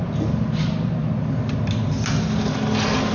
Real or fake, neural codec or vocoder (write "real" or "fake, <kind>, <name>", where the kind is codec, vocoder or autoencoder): real